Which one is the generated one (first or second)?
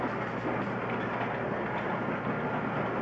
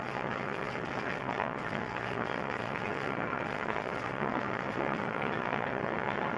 second